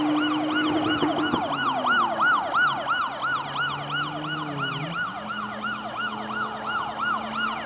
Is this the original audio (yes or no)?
yes